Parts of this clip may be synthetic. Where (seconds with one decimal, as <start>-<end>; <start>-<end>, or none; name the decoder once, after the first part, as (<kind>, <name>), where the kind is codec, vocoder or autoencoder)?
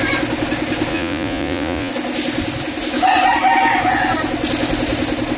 0.9-1.9 (vocoder, Vocos)